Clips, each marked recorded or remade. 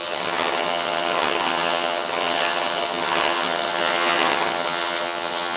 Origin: remade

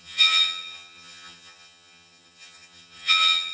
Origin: remade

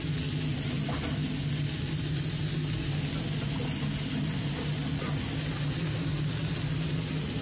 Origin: recorded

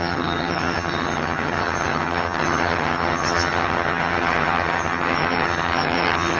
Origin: remade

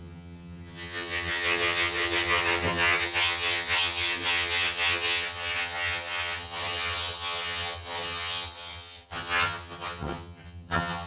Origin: remade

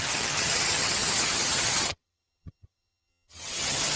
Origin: remade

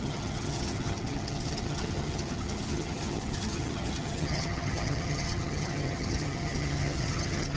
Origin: remade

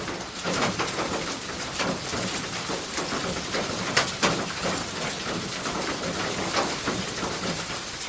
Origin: recorded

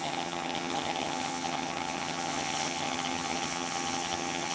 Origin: remade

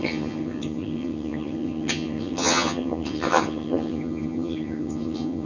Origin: remade